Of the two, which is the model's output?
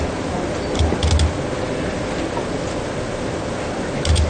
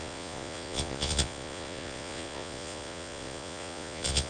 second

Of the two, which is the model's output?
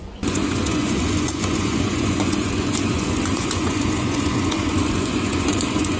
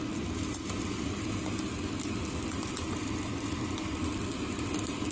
first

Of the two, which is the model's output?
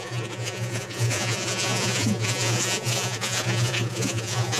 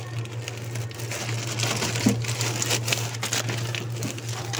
first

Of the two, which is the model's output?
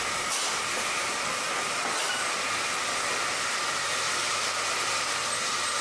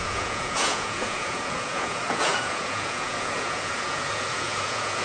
second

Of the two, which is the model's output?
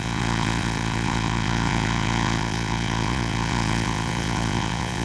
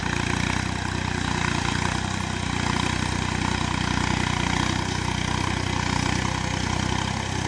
first